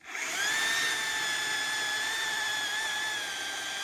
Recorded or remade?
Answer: recorded